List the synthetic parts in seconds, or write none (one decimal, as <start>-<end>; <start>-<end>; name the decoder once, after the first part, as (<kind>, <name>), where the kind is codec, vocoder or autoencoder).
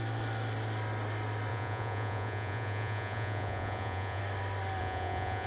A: 1.5-4.2 (vocoder, Vocos); 4.8-5.5